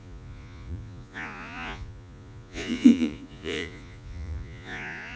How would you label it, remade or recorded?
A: remade